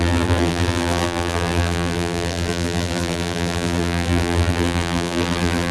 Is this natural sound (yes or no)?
no